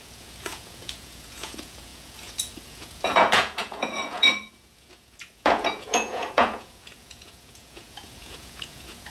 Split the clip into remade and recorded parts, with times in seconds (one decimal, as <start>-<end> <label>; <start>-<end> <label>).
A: 0.0-9.1 remade